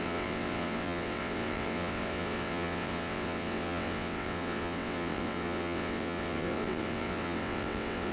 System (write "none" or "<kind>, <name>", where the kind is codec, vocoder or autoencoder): vocoder, WaveNeXt